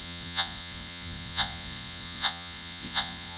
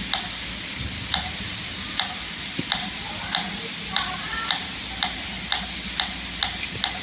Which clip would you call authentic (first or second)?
second